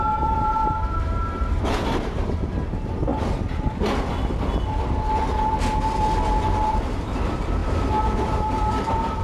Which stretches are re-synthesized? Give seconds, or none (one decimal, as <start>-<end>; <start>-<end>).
0.0-3.1; 6.9-9.2